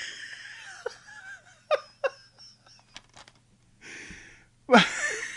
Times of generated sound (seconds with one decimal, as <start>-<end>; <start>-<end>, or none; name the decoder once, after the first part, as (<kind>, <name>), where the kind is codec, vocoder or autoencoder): none